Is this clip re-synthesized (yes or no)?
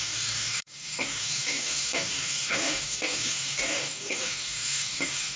yes